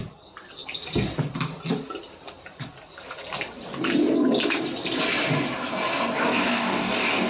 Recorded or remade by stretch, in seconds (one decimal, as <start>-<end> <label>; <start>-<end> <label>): 0.0-6.3 recorded; 6.3-7.3 remade